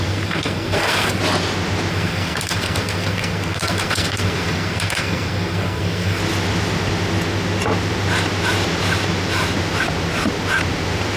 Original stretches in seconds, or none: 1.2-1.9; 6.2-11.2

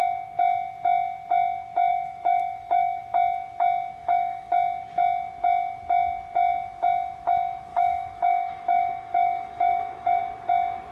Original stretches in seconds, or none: 0.0-1.9; 3.0-4.0; 4.5-7.7; 10.2-10.9

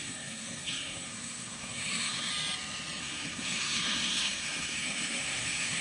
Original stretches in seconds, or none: 2.3-3.0

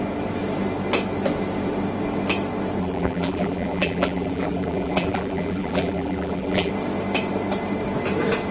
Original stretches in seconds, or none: 0.0-2.8; 6.7-8.5

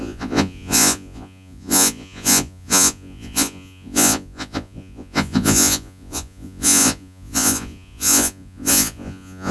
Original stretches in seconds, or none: none

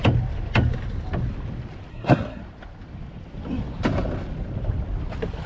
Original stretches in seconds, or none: 0.0-1.9; 2.4-5.5